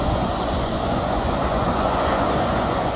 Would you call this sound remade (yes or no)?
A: yes